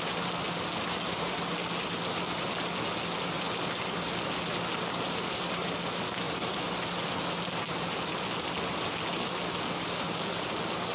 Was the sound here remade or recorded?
recorded